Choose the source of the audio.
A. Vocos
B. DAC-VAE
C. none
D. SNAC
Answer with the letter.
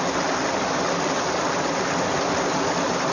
C